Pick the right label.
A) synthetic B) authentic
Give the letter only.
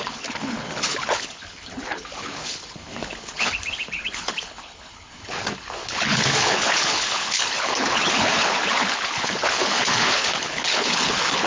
A